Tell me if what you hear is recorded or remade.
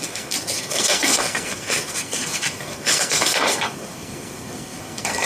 remade